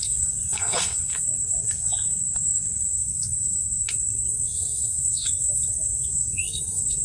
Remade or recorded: remade